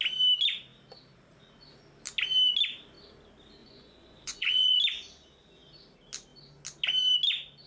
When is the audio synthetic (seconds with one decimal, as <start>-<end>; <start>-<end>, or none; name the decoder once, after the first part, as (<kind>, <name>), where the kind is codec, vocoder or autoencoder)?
3.6-4.8 (vocoder, Vocos)